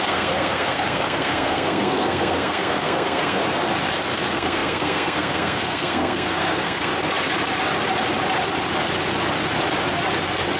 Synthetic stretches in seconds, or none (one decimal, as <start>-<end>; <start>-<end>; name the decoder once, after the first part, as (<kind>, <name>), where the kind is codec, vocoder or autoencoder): 0.0-3.4 (codec, SNAC); 4.1-6.9